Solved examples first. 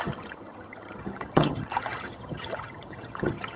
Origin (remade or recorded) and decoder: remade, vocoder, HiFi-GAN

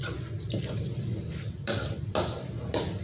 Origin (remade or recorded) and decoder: remade, vocoder, BigVGAN v2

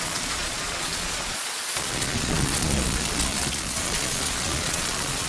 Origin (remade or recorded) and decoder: remade, vocoder, Vocos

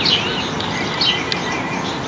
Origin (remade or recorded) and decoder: recorded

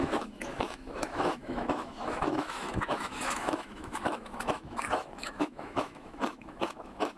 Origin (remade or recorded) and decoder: remade, autoencoder, DAC-VAE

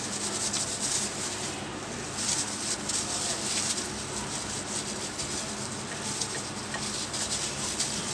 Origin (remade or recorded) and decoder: recorded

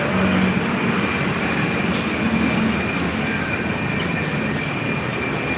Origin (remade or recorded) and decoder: recorded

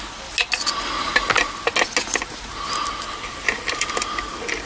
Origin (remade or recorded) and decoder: recorded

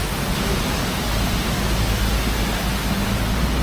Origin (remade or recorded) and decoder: recorded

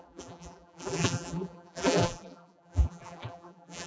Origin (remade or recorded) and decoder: remade, vocoder, BigVGAN v2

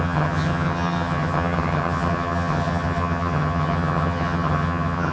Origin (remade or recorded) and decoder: remade, vocoder, HiFi-GAN